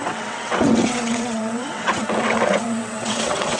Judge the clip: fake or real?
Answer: fake